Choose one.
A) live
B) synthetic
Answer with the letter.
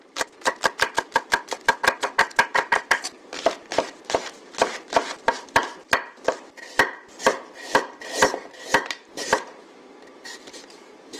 B